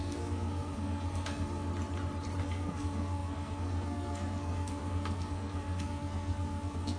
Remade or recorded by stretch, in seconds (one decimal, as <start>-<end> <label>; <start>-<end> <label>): 0.0-1.7 remade; 1.7-2.4 recorded; 2.4-7.0 remade